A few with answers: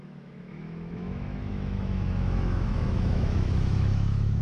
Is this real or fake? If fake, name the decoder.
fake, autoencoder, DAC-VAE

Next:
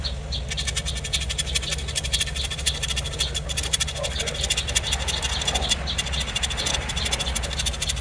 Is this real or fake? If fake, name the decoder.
real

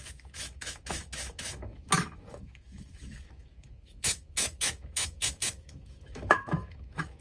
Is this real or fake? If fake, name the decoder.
fake, autoencoder, DAC-VAE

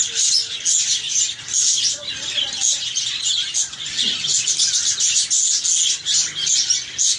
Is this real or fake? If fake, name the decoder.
real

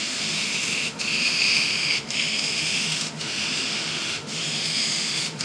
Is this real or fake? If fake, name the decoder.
fake, autoencoder, DAC-VAE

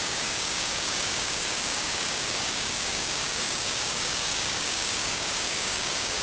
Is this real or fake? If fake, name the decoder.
fake, codec, DAC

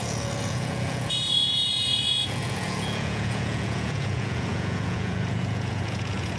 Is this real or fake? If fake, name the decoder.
fake, vocoder, Vocos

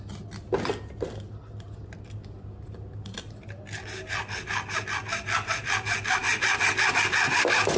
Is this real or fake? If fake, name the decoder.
real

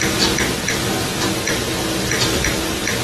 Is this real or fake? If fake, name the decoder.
real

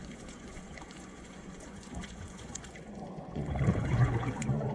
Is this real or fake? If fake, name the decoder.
fake, vocoder, Vocos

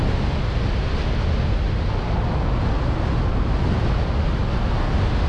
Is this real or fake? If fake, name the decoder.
real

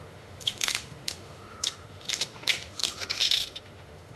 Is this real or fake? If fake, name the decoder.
fake, autoencoder, DAC-VAE